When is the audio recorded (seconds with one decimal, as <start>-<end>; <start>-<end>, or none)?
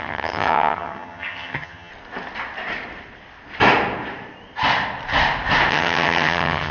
1.9-5.7